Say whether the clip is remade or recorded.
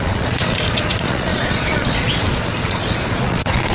remade